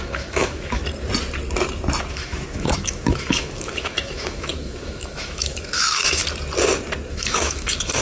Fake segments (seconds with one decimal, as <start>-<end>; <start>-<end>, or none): 0.0-0.8; 2.1-6.2; 7.1-8.0